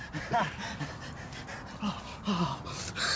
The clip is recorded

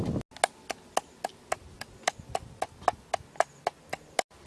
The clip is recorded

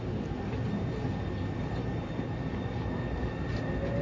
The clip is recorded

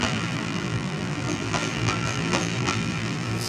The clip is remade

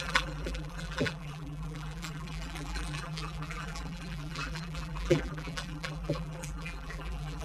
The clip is remade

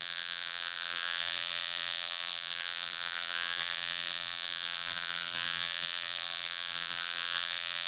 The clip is remade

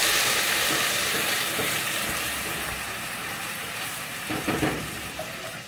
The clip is remade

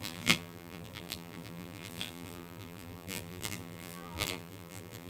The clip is remade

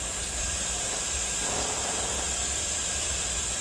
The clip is remade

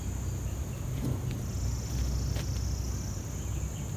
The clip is recorded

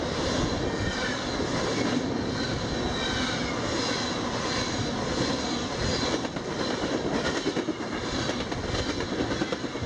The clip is recorded